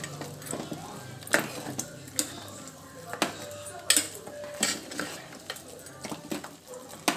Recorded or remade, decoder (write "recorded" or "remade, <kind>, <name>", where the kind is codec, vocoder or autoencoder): recorded